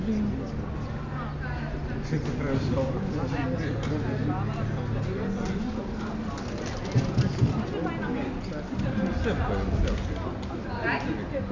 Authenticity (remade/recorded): recorded